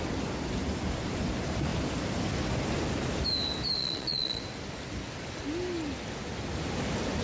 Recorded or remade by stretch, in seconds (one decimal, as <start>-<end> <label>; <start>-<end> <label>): 0.0-3.8 recorded; 3.8-4.4 remade; 4.4-7.2 recorded

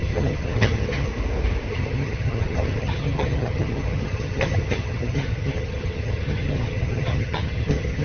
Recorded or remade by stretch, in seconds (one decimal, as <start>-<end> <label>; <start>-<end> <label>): 0.0-1.1 remade; 1.1-1.7 recorded; 1.7-8.0 remade